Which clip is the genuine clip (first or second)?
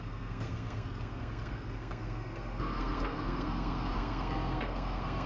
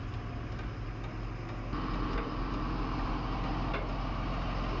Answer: second